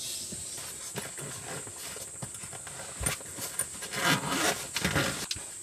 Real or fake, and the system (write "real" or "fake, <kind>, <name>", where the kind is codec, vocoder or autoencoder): real